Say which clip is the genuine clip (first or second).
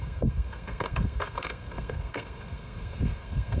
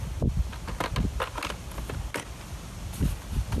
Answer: second